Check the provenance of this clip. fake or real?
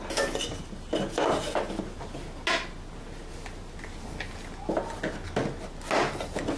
real